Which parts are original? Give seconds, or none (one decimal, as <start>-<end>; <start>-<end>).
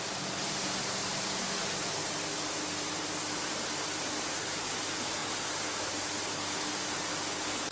0.0-7.7